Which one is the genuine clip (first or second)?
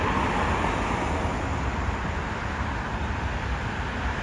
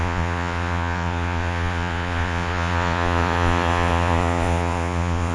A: first